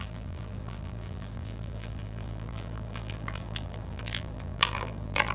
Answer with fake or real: fake